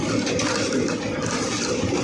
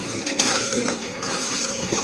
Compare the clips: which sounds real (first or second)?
first